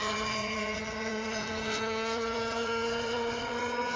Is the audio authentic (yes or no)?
no